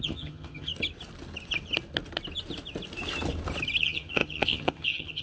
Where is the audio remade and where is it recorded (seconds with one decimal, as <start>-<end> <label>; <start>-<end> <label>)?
0.0-0.7 remade; 0.7-3.8 recorded; 3.8-5.2 remade